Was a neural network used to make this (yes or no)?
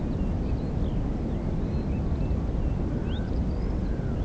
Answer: no